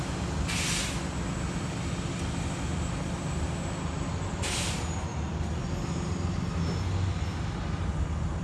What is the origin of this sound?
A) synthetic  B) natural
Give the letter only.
B